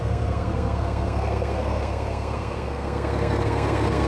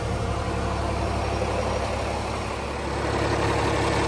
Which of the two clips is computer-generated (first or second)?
first